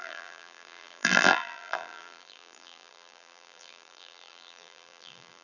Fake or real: fake